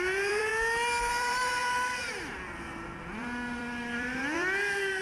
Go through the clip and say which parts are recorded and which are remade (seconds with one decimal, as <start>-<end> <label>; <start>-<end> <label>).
0.0-0.5 remade; 0.5-1.0 recorded; 1.0-5.0 remade